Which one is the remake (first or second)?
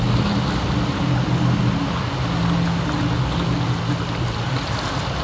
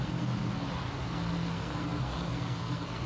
second